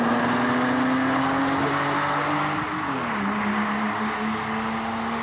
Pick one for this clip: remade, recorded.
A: recorded